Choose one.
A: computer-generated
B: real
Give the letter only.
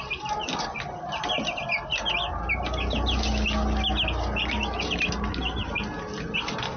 B